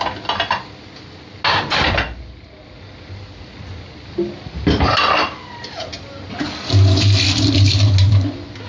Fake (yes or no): no